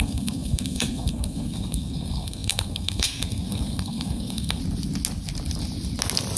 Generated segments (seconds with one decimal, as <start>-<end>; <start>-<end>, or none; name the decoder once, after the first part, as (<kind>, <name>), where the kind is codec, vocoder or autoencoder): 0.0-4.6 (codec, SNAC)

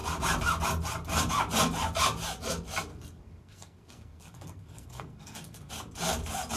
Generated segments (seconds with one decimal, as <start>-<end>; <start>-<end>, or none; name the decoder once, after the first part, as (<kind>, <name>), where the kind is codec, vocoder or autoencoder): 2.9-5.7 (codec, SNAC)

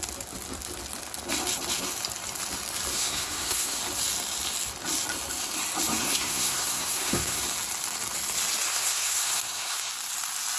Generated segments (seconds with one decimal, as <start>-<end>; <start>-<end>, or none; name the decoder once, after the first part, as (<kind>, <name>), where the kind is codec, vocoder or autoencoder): 2.9-3.8 (codec, SNAC); 6.0-7.4; 8.7-9.9

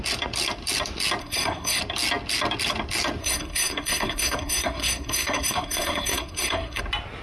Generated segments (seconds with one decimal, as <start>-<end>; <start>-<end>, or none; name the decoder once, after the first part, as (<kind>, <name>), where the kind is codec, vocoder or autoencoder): 1.2-1.8 (codec, SNAC); 3.2-6.8